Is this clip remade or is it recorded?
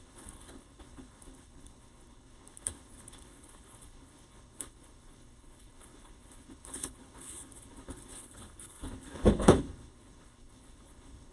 remade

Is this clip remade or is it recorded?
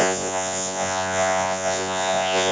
remade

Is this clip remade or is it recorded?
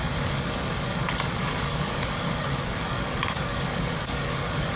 remade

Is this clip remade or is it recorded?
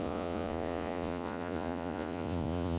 remade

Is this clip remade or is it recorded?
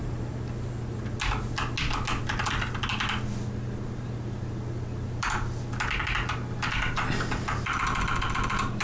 recorded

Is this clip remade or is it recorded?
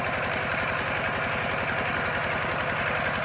recorded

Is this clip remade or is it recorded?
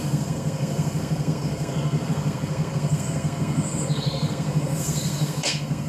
remade